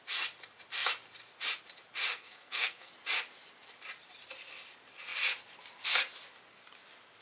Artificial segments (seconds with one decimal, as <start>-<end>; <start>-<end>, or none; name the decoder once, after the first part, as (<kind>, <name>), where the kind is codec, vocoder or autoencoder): 2.1-2.9 (codec, SNAC)

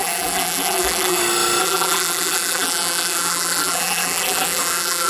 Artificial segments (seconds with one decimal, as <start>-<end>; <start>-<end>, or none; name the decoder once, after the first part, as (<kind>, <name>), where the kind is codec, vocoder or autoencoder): 0.0-1.2 (vocoder, BigVGAN v2); 1.6-5.1

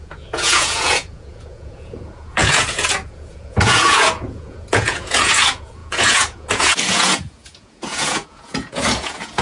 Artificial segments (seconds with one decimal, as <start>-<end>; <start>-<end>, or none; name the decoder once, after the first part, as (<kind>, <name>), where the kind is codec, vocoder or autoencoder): 0.0-9.4 (vocoder, Vocos)

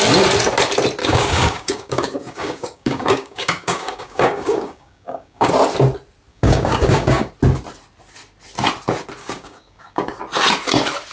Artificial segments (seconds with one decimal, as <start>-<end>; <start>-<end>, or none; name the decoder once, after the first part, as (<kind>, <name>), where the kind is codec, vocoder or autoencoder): 1.0-5.5 (codec, DAC); 6.3-7.3; 9.2-10.2

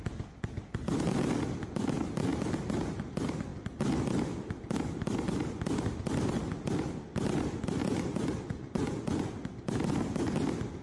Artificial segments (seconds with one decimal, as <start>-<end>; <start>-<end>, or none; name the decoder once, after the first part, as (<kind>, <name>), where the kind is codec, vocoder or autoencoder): 7.8-9.3 (vocoder, Vocos)

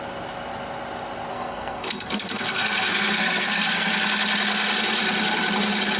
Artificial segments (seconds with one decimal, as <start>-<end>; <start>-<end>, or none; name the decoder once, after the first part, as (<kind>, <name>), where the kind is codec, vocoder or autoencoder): 1.3-3.9 (codec, SNAC)

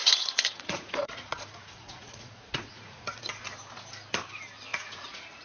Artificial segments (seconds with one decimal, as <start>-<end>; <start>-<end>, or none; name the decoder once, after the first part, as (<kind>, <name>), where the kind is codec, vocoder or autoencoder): 0.0-3.2 (vocoder, Vocos); 4.7-5.4